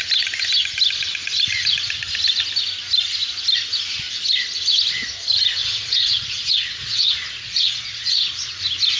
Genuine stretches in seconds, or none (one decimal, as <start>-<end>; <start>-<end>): 0.0-5.6; 8.6-9.0